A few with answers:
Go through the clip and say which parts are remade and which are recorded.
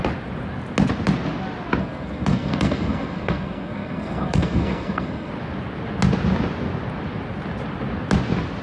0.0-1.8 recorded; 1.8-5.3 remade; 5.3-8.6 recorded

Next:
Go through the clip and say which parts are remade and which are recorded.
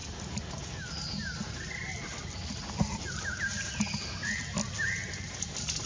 0.0-5.9 recorded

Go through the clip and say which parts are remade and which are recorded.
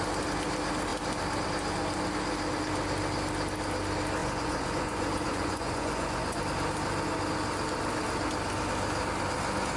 0.0-4.2 recorded; 4.2-6.4 remade; 6.4-9.8 recorded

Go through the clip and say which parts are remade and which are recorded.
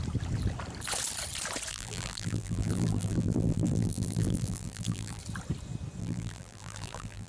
0.0-1.7 recorded; 1.7-5.2 remade; 5.2-6.0 recorded; 6.0-7.3 remade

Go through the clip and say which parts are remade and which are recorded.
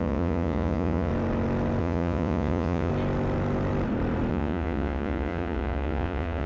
0.0-1.1 remade; 1.1-1.8 recorded; 1.8-2.9 remade; 2.9-4.3 recorded; 4.3-6.5 remade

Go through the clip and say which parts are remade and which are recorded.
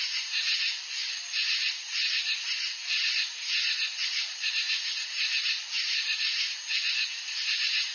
0.0-1.0 remade; 1.0-4.5 recorded; 4.5-6.6 remade; 6.6-7.2 recorded; 7.2-7.9 remade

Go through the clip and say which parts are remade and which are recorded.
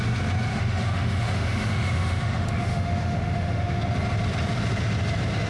0.0-0.5 recorded; 0.5-3.8 remade; 3.8-5.5 recorded